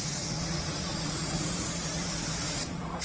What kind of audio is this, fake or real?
fake